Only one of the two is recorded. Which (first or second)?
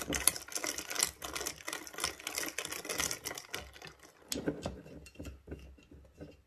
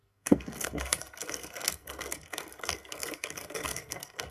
first